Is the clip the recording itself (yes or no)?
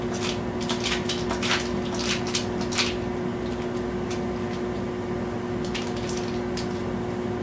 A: yes